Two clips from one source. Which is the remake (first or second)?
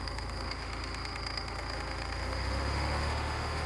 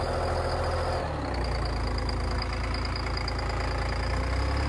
first